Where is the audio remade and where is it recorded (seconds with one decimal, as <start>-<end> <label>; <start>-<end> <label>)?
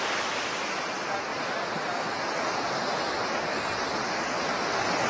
0.0-5.1 recorded